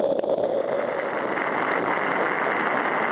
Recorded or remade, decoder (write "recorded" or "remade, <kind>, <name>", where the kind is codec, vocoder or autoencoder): recorded